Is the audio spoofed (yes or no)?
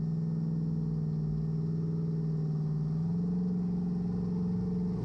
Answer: no